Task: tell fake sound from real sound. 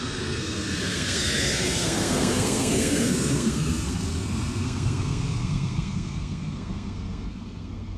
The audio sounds fake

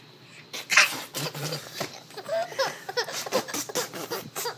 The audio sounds real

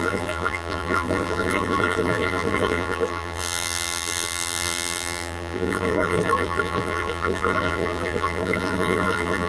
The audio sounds fake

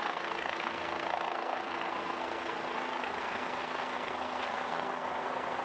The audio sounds fake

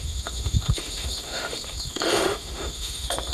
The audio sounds fake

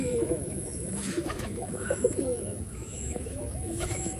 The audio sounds fake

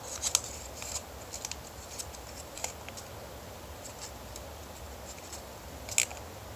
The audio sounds real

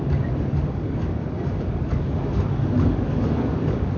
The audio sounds fake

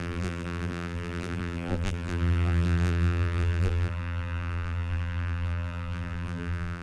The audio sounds fake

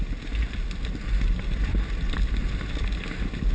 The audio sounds real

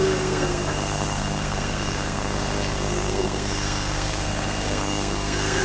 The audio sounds fake